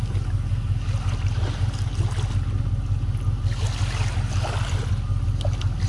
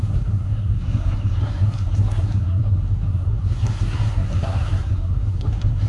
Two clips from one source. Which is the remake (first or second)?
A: second